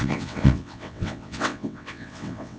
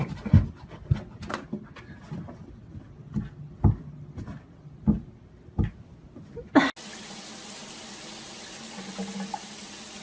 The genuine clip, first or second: second